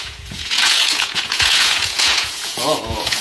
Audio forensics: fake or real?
fake